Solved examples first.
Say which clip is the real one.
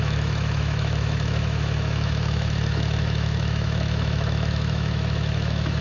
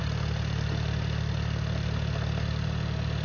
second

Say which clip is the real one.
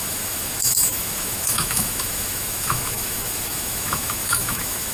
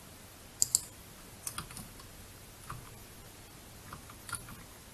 second